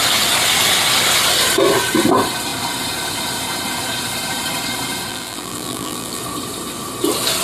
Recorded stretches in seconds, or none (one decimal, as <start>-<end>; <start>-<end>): 0.0-5.1; 6.2-7.4